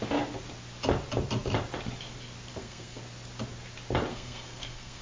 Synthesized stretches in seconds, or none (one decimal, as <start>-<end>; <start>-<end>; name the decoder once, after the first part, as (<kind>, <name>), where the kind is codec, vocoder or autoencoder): 2.5-3.0 (codec, SNAC); 4.1-5.0

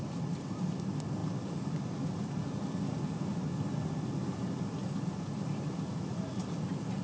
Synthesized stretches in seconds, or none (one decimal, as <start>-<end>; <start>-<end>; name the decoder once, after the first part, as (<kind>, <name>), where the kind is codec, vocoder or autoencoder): none

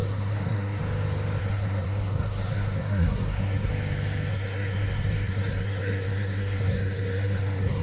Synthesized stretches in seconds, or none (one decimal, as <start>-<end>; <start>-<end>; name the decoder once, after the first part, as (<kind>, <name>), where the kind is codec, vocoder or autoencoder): 0.0-0.8 (codec, SNAC); 1.4-3.7; 4.3-7.8

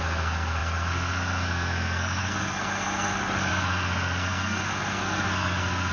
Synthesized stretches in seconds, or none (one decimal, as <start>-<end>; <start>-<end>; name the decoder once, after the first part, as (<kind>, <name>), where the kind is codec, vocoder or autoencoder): 0.0-5.9 (codec, SNAC)

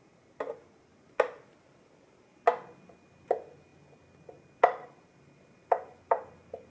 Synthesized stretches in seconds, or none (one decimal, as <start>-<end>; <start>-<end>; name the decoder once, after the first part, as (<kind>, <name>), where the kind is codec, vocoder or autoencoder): none

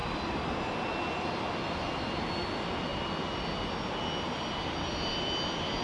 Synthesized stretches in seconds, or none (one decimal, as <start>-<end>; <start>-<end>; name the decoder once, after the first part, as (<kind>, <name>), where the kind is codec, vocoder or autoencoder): none

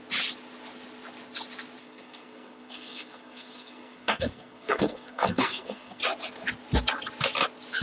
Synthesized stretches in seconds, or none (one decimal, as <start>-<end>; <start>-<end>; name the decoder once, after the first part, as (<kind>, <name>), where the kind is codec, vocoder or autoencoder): 1.8-6.0 (codec, SNAC)